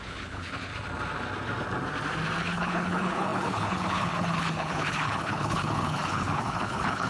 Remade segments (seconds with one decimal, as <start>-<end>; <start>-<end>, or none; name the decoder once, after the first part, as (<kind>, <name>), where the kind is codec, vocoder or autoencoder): 0.0-0.7 (codec, HILCodec); 2.4-7.1